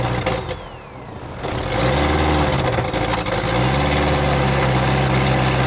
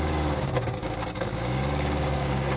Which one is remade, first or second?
second